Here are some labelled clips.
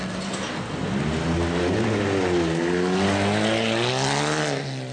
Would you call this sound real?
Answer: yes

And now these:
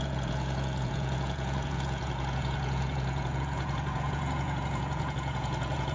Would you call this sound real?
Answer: no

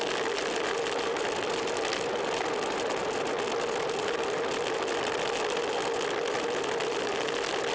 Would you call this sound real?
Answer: yes